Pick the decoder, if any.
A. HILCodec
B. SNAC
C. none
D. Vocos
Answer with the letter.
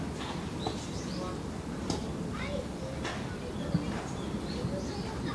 C